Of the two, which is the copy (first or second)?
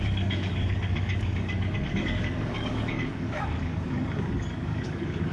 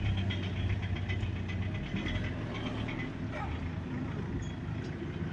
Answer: first